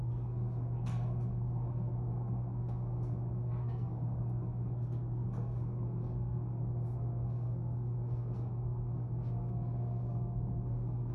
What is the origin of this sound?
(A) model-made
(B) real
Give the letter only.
A